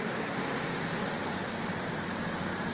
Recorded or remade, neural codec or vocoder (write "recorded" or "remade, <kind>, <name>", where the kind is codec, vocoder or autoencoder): remade, vocoder, BigVGAN v2